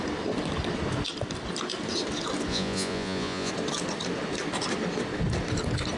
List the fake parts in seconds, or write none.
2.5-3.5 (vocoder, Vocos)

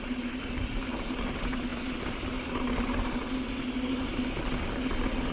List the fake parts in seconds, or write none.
none

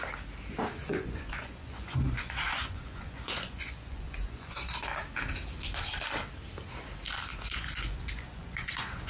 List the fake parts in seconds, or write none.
0.8-4.8 (vocoder, Vocos); 7.3-9.1

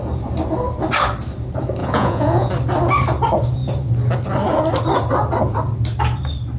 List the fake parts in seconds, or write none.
1.8-2.5 (vocoder, Vocos)

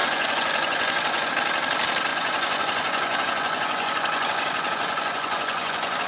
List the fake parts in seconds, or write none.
0.0-1.3 (vocoder, Vocos); 2.1-6.1